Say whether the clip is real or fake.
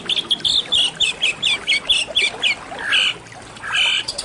real